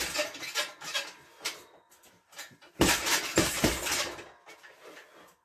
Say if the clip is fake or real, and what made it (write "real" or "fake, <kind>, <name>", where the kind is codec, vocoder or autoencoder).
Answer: real